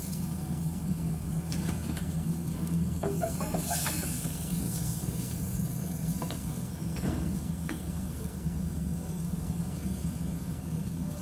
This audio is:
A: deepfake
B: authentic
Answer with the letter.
A